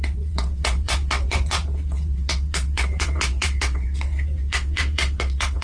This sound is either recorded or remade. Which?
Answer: remade